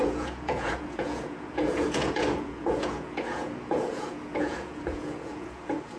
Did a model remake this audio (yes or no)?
yes